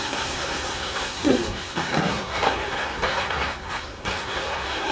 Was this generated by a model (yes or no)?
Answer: yes